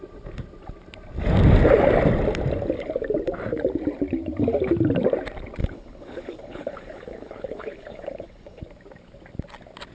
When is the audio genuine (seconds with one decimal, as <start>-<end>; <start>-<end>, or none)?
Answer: 0.0-5.6; 8.6-9.9